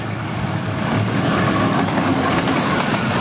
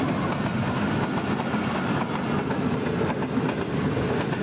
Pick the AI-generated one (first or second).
first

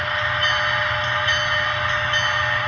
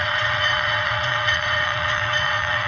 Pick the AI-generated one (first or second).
second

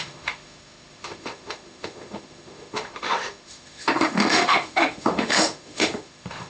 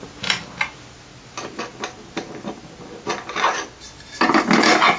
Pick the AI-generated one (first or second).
first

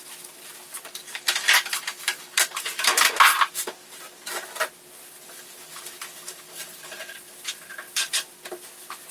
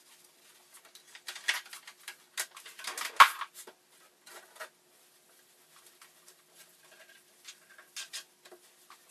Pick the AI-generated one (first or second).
first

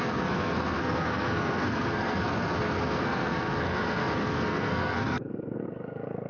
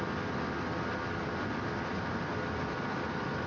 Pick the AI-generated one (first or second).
first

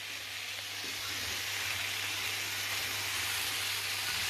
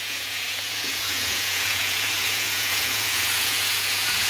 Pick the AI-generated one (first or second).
second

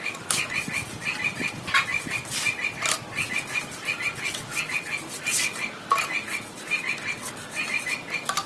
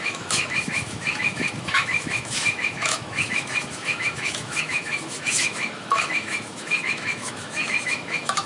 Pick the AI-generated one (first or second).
second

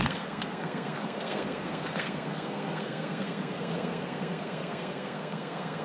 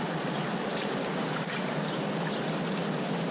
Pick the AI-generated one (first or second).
first